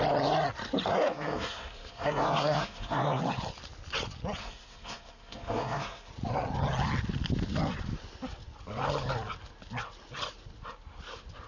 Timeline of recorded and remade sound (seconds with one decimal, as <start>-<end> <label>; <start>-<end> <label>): 0.0-0.9 recorded; 0.9-3.2 remade; 3.2-4.4 recorded; 4.4-6.1 remade; 6.1-11.5 recorded